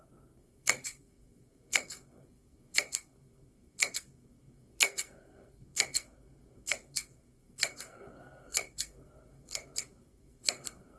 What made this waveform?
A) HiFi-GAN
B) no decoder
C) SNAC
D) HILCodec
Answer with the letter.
C